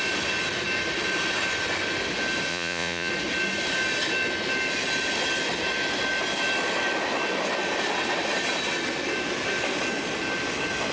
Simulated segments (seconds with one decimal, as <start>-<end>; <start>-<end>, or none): 2.5-3.1